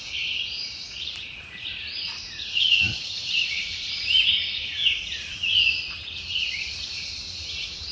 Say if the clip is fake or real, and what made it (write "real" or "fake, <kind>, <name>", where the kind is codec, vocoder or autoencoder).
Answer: fake, vocoder, Vocos